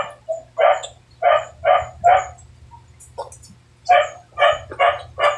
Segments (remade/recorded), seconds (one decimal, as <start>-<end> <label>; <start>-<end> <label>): 0.0-5.4 recorded